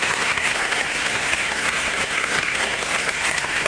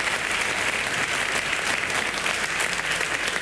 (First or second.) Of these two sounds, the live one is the second